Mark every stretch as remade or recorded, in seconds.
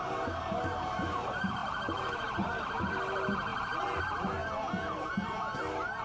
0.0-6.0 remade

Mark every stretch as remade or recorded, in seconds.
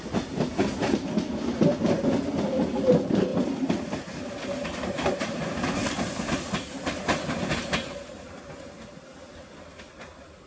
0.0-3.3 recorded; 3.3-7.5 remade; 7.5-10.5 recorded